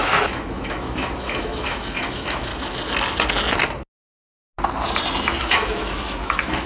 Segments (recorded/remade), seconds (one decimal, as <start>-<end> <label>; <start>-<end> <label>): 0.0-2.5 remade; 2.5-5.4 recorded; 5.4-6.7 remade